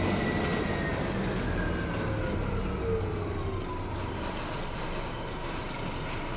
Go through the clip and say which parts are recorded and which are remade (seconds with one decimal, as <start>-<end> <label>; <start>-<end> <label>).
0.0-6.4 recorded